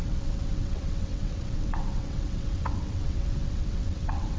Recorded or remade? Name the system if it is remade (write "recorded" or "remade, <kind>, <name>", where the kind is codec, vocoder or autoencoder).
remade, vocoder, WaveNeXt